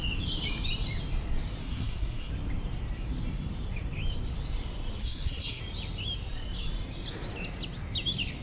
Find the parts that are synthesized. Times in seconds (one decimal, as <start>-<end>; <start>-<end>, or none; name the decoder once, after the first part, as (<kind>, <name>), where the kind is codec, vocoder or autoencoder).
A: 1.6-2.3 (codec, SNAC); 5.0-5.6